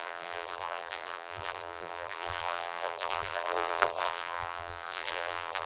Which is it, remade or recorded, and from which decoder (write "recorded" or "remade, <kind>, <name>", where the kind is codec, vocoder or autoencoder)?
remade, vocoder, BigVGAN v2